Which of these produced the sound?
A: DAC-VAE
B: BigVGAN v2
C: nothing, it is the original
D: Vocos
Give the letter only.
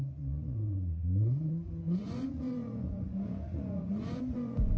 D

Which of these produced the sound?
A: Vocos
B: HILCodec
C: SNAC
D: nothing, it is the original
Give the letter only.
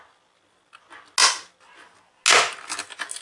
D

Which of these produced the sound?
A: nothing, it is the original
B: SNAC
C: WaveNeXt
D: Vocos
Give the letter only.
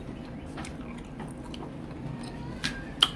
A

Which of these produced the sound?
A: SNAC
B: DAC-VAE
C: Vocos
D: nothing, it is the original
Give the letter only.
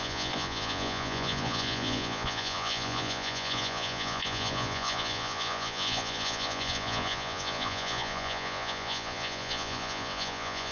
C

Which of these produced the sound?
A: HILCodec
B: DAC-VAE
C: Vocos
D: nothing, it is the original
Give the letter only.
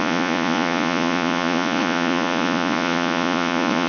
C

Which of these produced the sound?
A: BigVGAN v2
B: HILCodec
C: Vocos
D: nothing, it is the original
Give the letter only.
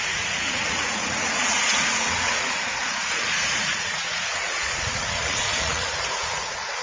C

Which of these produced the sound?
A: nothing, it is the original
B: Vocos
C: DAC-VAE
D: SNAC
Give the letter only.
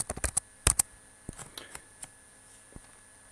A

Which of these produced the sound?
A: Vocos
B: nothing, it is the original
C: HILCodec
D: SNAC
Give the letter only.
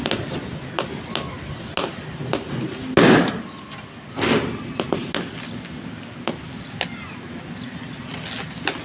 B